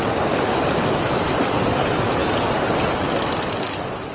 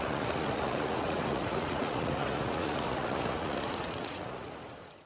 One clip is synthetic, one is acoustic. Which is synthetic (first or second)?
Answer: second